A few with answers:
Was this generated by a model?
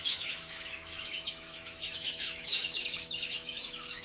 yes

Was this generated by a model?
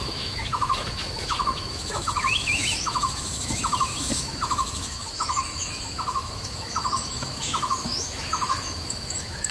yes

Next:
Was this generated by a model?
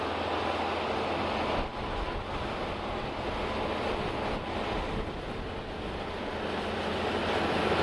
no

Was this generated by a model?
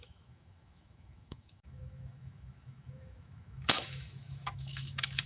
yes